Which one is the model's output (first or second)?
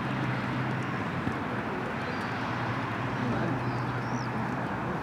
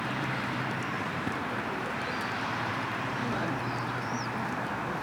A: second